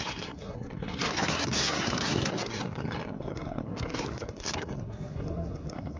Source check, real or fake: fake